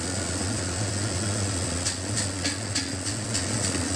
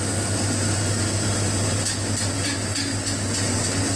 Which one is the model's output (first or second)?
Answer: first